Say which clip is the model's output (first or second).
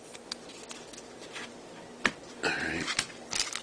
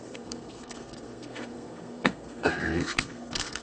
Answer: second